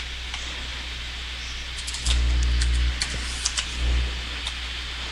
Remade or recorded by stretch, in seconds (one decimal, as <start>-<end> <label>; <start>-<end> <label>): 0.0-5.1 recorded